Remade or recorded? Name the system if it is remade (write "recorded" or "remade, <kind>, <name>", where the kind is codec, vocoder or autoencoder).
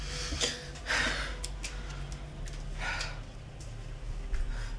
recorded